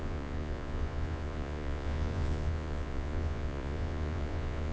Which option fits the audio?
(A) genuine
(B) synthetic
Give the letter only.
B